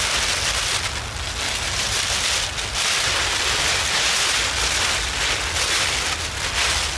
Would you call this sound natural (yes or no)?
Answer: yes